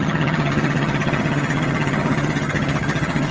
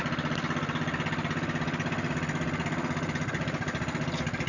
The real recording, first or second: second